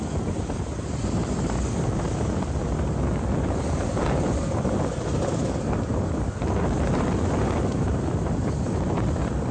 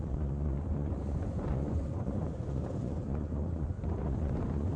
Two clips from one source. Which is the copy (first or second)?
second